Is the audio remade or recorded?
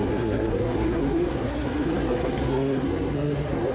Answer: remade